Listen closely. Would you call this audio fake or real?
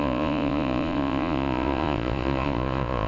fake